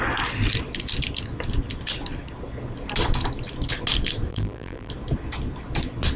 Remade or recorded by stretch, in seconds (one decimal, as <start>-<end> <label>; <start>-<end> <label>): 0.0-4.3 recorded; 4.3-4.9 remade; 4.9-6.2 recorded